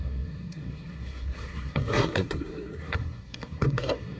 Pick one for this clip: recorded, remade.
remade